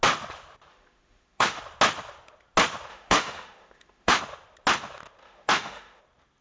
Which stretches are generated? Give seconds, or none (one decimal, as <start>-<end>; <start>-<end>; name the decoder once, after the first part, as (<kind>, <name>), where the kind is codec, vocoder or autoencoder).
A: 0.7-1.6 (autoencoder, DAC-VAE); 2.9-4.2; 5.2-6.0